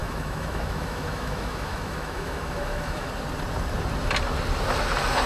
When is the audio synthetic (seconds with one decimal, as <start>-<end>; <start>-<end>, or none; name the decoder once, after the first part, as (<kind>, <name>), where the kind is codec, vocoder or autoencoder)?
0.0-3.1 (autoencoder, DAC-VAE)